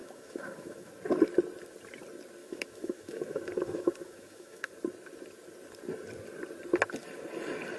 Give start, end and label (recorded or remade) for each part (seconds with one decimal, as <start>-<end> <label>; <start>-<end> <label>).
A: 0.0-0.9 remade; 0.9-2.4 recorded; 2.4-4.7 remade; 4.7-7.8 recorded